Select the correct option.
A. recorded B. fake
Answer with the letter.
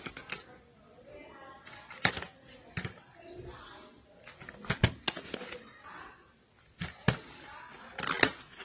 A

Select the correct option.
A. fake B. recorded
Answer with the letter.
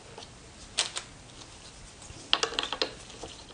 B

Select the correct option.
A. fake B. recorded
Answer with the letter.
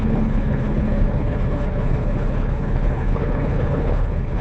A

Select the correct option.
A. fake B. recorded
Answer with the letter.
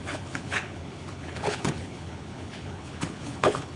A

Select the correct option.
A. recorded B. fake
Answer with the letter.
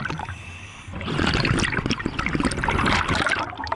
A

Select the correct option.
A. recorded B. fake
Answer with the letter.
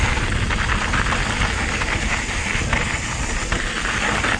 A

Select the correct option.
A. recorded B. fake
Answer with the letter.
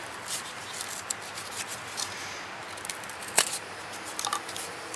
A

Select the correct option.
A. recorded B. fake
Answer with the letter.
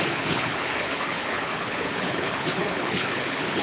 B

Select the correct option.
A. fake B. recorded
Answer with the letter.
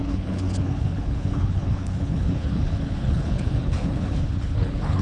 A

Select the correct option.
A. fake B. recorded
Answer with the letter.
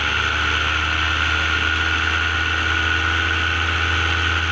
B